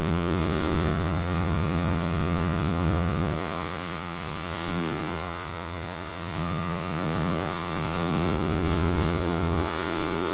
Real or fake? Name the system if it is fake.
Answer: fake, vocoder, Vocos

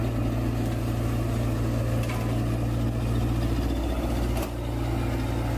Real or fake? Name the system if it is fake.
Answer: real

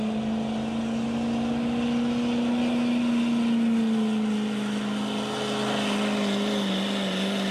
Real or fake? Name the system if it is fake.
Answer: real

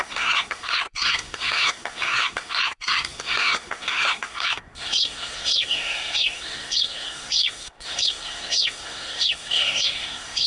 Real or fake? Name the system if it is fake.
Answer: fake, codec, SNAC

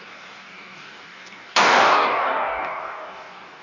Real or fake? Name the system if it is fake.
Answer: fake, codec, DAC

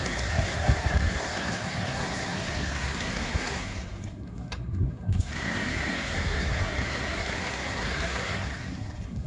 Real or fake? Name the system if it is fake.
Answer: fake, codec, SNAC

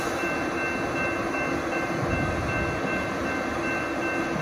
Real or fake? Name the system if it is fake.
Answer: real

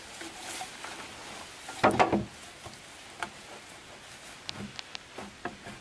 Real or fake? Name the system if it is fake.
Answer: real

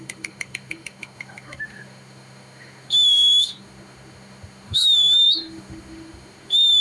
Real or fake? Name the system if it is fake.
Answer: fake, autoencoder, DAC-VAE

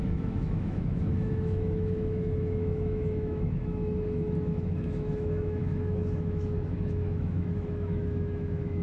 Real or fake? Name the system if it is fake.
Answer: fake, autoencoder, DAC-VAE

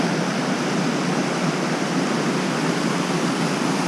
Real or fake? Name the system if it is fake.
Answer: real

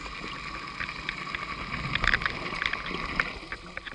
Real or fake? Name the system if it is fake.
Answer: real